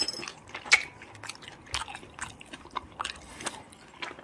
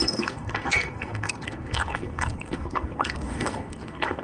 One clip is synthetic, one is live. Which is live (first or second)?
first